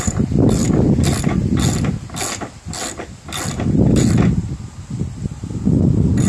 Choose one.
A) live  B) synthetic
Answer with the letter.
A